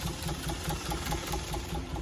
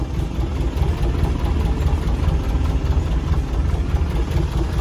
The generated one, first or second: first